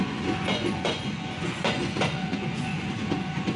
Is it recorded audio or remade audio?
remade